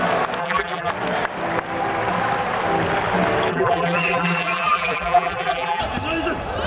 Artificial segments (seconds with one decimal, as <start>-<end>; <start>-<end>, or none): 0.4-0.9; 3.5-5.8